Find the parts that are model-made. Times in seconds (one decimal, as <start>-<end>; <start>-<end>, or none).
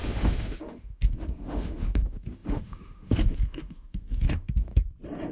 0.0-4.7